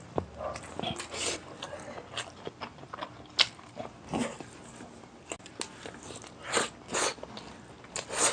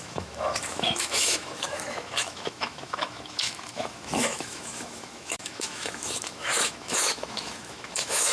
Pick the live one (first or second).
first